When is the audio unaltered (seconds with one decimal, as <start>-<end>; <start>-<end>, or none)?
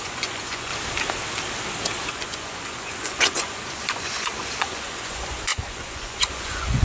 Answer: 0.7-2.1